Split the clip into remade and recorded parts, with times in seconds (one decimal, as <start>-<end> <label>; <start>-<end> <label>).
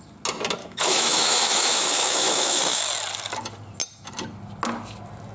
0.0-0.6 recorded; 0.6-2.8 remade; 2.8-5.3 recorded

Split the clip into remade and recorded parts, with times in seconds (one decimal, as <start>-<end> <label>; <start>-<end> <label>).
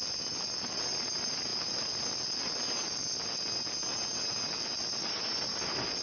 0.0-6.0 recorded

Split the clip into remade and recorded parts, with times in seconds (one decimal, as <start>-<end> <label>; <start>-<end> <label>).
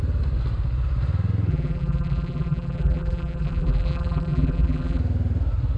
0.0-1.5 recorded; 1.5-5.0 remade; 5.0-5.8 recorded